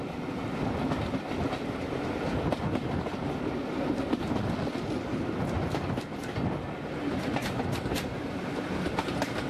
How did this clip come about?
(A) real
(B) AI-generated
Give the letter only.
A